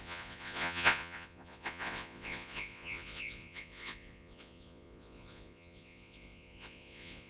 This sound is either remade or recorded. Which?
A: remade